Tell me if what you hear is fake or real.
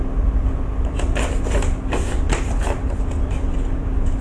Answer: real